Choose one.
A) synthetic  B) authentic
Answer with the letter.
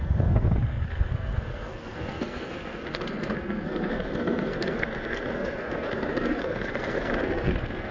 A